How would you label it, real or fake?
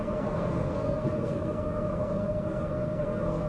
fake